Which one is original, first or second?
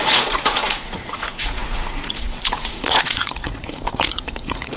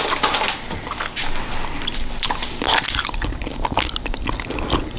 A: second